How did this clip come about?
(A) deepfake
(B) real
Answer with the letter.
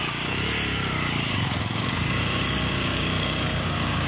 A